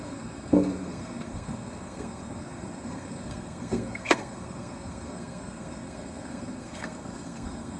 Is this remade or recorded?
remade